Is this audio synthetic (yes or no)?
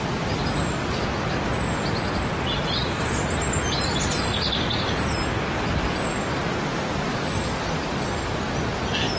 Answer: no